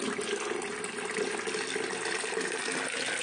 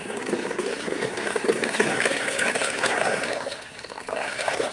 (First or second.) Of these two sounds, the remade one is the second